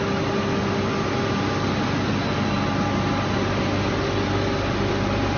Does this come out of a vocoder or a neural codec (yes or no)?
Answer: no